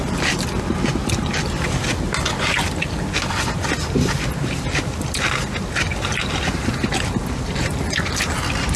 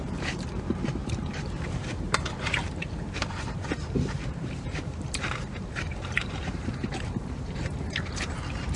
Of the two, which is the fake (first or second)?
second